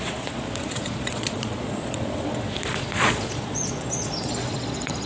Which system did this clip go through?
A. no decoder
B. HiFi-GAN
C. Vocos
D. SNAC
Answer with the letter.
C